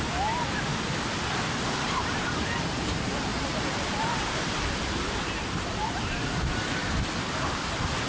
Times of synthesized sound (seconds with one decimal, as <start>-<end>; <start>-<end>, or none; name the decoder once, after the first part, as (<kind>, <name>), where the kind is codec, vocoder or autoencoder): 0.0-0.7 (vocoder, BigVGAN v2); 1.7-6.8